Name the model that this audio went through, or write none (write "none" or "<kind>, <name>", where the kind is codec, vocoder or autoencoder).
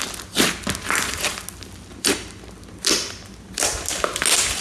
none